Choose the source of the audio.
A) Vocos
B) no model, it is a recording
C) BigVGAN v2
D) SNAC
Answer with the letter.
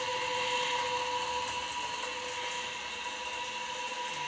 B